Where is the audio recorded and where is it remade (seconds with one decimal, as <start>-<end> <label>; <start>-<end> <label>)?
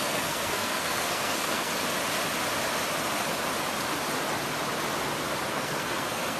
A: 0.0-1.7 remade; 1.7-5.5 recorded; 5.5-6.4 remade